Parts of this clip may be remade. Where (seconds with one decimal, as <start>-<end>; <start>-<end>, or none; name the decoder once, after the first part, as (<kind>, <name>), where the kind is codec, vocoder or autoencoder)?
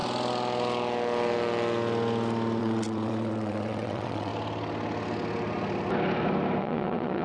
2.6-4.3 (vocoder, WaveNeXt); 6.6-7.2